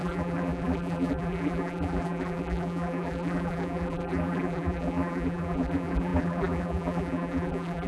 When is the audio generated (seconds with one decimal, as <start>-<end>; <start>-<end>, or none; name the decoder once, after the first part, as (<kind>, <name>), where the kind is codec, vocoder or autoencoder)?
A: 0.0-7.9 (vocoder, BigVGAN v2)